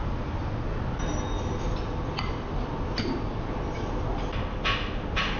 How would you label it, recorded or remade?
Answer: recorded